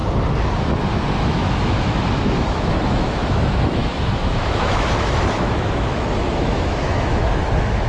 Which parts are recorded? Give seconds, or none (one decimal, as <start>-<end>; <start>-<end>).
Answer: 0.0-1.2